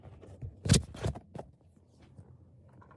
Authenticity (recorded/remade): recorded